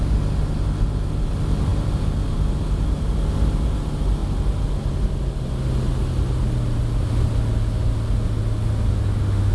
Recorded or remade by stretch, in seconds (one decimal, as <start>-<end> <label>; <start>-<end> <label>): 0.0-9.5 recorded